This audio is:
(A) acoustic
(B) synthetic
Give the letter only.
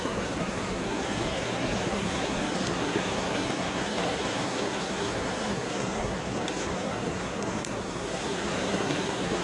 B